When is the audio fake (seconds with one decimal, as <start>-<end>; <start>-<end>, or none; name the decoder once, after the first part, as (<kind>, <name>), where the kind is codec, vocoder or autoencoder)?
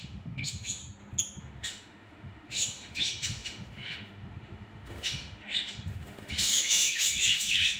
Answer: 0.0-0.8 (autoencoder, DAC-VAE); 1.4-7.8